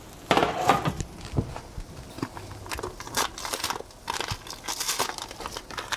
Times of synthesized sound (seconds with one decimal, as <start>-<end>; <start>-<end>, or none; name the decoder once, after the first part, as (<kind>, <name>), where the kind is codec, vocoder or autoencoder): none